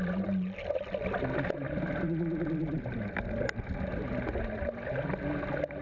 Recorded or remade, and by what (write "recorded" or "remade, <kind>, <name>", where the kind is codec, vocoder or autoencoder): recorded